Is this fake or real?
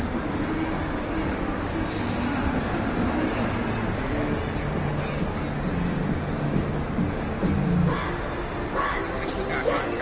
real